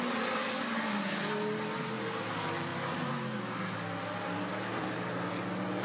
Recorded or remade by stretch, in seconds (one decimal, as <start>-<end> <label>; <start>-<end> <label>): 0.0-5.8 recorded